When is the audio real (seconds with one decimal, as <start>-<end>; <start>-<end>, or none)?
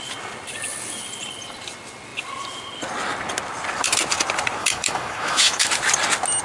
0.0-4.6; 5.7-6.4